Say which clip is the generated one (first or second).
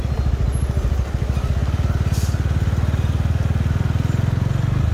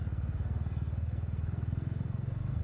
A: second